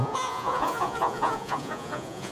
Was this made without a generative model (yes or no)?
no